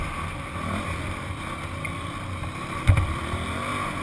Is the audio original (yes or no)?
yes